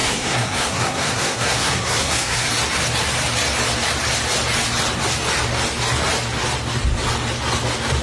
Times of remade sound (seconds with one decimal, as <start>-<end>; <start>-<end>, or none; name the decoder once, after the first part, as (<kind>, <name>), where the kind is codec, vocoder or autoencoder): 0.0-2.5 (codec, SNAC)